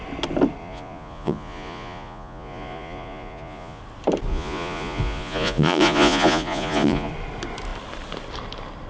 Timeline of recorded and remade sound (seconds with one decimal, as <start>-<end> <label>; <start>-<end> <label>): 0.0-0.6 recorded; 0.6-3.8 remade; 3.8-4.3 recorded; 4.3-7.1 remade; 7.1-8.9 recorded